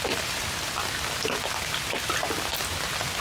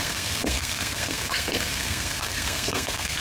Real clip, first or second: first